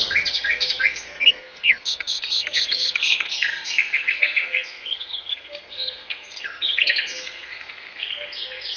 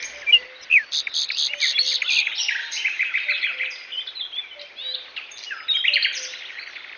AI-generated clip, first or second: first